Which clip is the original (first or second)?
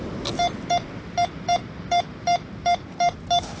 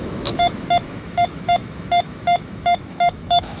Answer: first